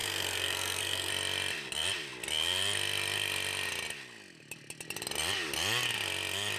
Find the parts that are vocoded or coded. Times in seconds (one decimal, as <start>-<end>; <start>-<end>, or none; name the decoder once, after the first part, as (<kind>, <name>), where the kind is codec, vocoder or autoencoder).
0.0-1.1 (codec, SNAC)